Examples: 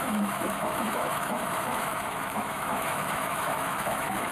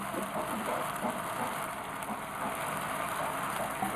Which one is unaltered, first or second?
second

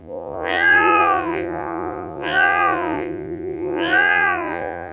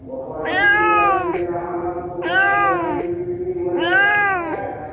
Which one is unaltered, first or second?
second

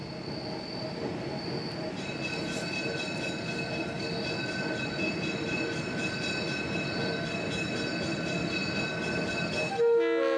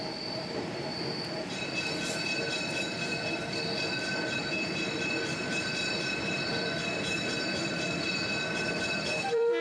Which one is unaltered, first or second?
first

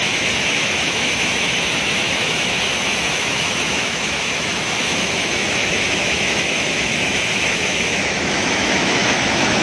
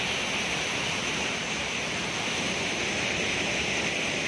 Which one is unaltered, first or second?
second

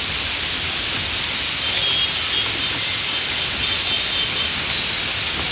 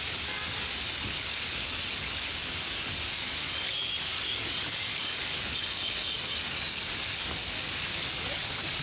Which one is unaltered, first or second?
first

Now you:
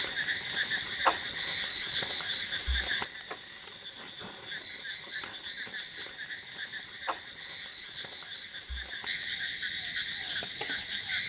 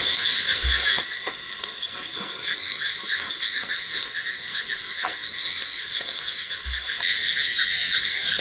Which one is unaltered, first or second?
first